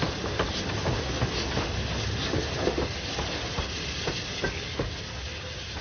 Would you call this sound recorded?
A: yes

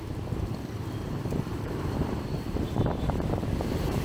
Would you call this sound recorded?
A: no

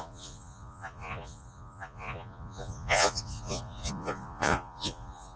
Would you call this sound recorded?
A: no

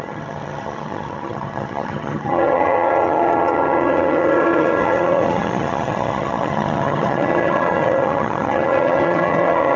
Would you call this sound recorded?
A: no